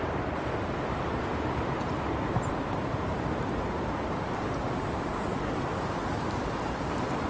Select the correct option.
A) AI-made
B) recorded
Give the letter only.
A